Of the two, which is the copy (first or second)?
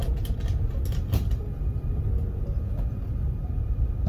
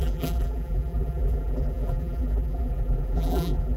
second